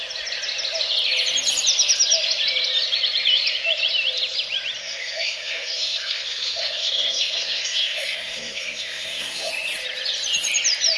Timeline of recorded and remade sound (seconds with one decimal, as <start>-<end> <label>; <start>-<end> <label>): 0.0-4.8 recorded; 4.8-9.5 remade; 9.5-11.0 recorded